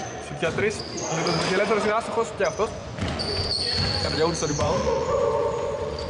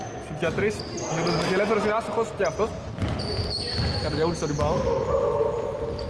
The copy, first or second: first